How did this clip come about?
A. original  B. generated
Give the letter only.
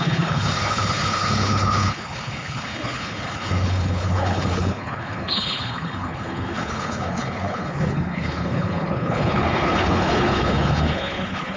B